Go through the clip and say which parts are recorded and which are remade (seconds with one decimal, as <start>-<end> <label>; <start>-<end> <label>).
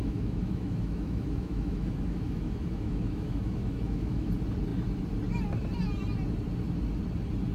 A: 0.0-4.3 remade; 4.3-7.5 recorded